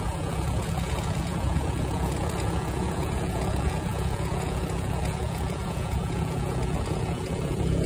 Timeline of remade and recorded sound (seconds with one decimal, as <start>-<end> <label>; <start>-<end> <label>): 0.0-7.9 remade